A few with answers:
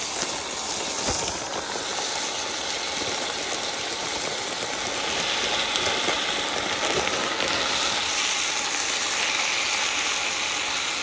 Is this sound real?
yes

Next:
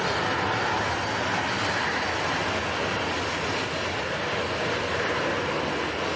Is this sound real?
yes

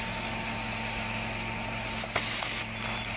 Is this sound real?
yes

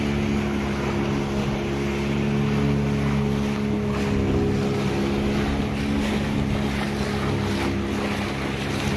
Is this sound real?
yes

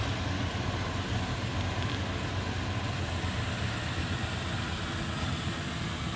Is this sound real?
yes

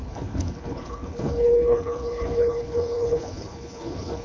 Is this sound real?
no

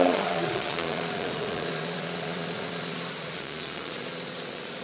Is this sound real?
no